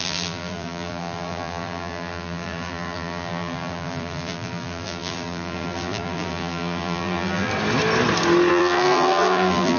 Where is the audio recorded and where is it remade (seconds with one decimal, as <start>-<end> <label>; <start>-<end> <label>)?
0.0-7.5 remade; 7.5-8.5 recorded; 8.5-9.8 remade